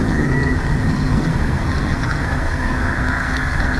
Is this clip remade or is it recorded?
remade